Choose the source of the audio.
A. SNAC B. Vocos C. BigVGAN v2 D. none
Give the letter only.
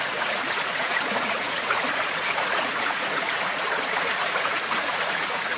B